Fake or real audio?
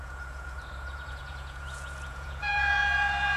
fake